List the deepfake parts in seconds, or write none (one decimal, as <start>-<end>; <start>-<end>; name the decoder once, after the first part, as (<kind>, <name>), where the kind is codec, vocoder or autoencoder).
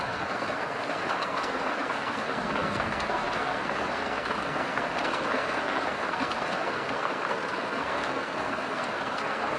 0.0-9.6 (codec, SNAC)